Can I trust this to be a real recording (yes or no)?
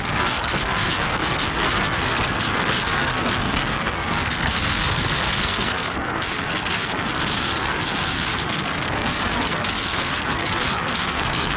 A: no